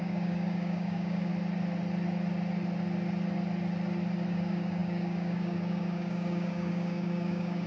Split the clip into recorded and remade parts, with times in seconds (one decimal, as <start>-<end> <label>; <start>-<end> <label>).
0.0-1.3 remade; 1.3-4.3 recorded; 4.3-7.7 remade